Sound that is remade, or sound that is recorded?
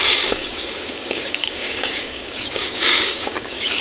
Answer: remade